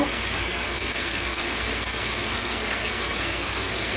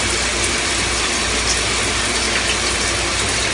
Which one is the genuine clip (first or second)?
second